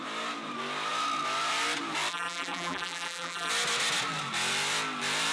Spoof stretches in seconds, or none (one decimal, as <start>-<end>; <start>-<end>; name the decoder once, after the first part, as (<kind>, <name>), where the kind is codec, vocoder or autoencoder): 2.1-3.5 (vocoder, BigVGAN v2)